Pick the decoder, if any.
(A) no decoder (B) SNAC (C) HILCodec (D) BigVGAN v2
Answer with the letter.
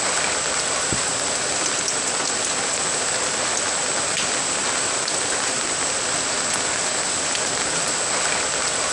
A